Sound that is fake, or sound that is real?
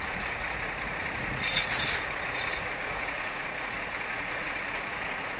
fake